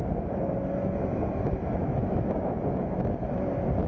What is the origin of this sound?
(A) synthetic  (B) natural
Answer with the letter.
A